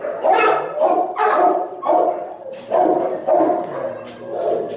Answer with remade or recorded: recorded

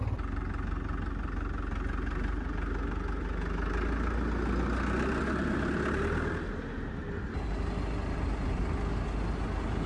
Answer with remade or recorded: recorded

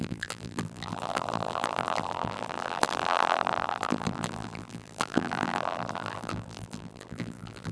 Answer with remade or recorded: remade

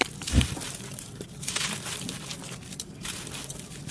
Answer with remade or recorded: recorded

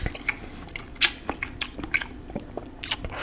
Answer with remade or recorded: recorded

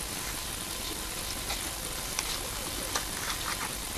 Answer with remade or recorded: recorded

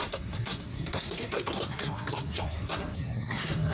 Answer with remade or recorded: remade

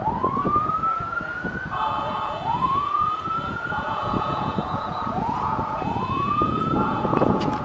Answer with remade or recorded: remade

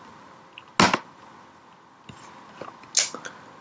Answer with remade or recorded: recorded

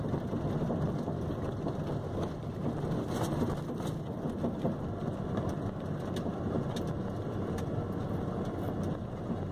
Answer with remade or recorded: recorded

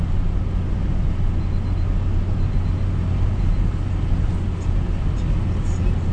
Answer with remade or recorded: recorded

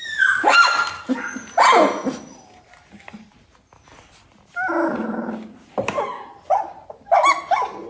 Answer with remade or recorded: recorded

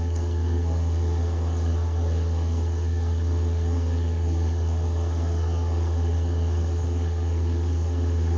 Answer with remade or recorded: remade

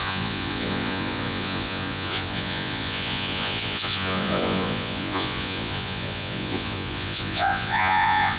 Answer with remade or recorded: remade